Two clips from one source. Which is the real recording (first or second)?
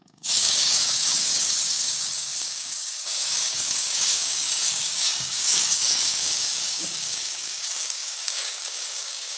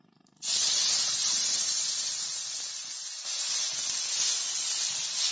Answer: second